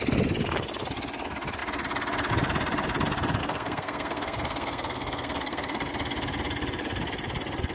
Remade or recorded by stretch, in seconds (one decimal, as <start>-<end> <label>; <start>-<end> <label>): 0.0-3.4 recorded; 3.4-5.9 remade; 5.9-7.7 recorded